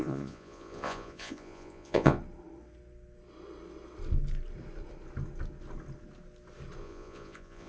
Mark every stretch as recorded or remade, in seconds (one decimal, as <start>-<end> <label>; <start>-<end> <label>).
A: 0.0-2.2 remade; 2.2-6.8 recorded; 6.8-7.7 remade